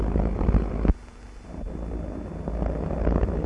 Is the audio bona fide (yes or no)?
yes